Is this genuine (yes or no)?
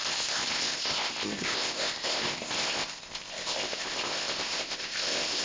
no